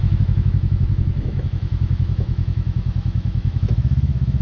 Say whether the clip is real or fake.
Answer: fake